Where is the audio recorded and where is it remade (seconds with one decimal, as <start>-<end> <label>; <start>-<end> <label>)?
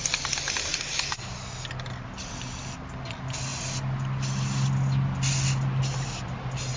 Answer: 0.0-6.8 recorded